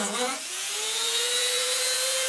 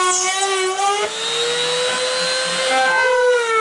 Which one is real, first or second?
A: second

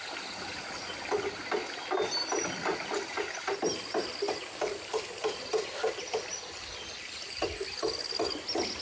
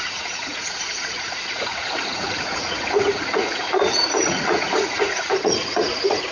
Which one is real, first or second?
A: first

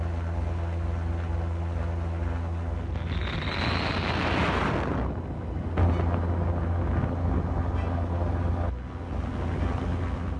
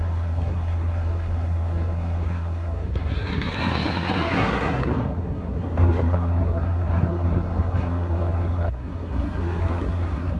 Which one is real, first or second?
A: first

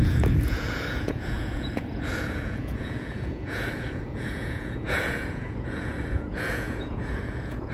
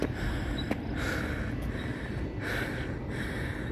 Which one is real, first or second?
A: second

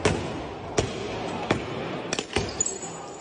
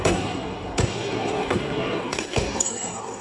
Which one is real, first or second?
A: first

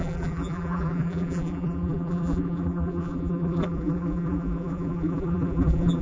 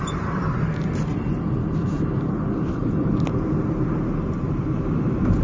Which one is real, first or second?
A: second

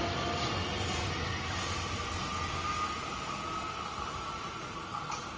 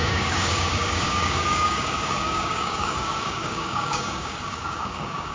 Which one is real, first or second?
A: first